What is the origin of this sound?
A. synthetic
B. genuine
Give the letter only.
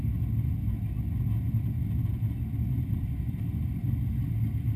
B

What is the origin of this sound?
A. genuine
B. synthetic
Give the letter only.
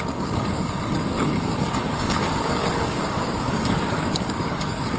B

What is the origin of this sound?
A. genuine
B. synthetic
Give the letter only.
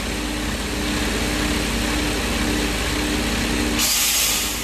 A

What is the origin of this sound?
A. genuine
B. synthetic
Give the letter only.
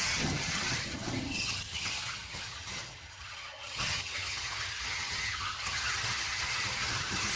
B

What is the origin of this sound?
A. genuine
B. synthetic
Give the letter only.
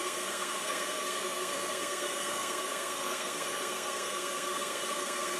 B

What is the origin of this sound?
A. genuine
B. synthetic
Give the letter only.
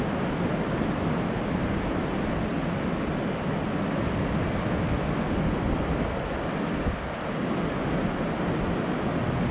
A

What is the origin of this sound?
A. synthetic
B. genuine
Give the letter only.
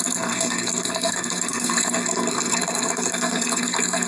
A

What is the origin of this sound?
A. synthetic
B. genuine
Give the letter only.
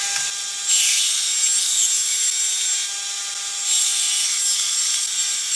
B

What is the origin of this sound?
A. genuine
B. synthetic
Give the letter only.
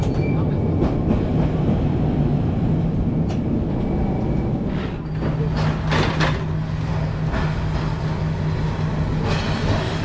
A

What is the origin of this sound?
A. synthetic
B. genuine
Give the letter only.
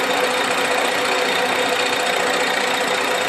B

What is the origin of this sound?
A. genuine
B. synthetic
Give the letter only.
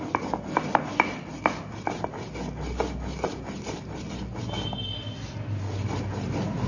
A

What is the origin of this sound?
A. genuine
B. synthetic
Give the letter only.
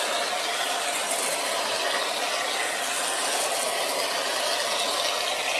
A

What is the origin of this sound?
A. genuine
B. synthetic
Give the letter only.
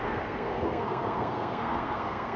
B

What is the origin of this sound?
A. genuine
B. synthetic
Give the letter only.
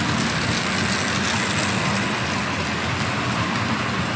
A